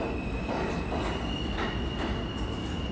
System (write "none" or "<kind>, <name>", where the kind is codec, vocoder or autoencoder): none